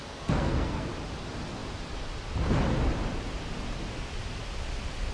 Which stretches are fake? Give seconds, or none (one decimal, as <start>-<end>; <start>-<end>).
0.0-0.9